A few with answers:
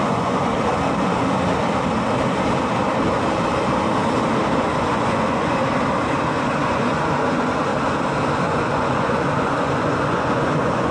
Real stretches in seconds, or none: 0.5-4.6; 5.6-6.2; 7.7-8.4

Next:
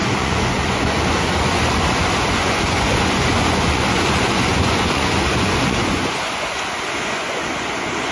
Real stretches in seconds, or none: none